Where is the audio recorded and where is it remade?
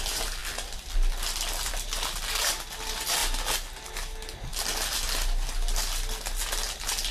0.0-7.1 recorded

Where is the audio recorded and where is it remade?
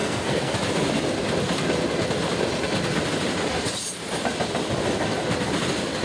0.0-0.5 remade; 0.5-6.0 recorded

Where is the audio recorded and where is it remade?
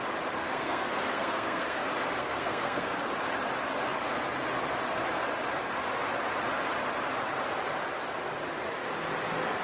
0.0-0.4 recorded; 0.4-1.8 remade; 1.8-2.2 recorded; 2.2-3.0 remade; 3.0-9.6 recorded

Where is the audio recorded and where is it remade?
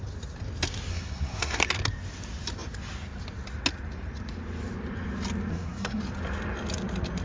0.0-0.9 recorded; 0.9-1.6 remade; 1.6-5.5 recorded; 5.5-6.0 remade; 6.0-7.2 recorded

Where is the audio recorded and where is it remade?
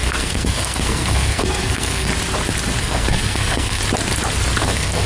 0.0-2.1 remade; 2.1-2.8 recorded; 2.8-3.8 remade; 3.8-4.6 recorded; 4.6-5.1 remade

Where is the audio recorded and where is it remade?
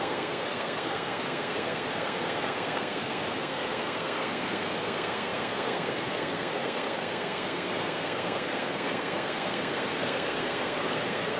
0.0-11.4 remade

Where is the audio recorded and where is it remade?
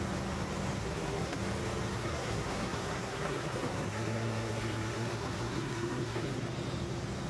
0.0-0.8 recorded; 0.8-1.4 remade; 1.4-2.0 recorded; 2.0-6.4 remade; 6.4-7.3 recorded